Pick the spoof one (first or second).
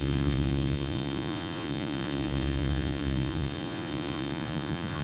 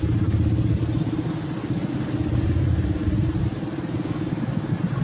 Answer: first